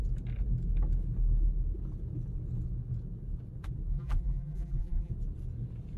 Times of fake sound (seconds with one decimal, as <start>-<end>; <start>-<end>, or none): 3.9-5.1